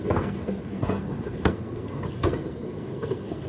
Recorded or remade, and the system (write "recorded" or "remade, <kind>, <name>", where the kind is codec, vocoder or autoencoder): remade, codec, SNAC